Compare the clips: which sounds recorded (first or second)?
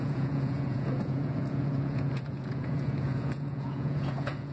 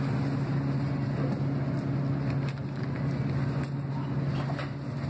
second